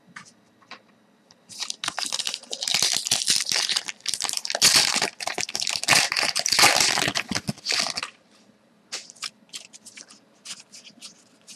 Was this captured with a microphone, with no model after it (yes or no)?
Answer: yes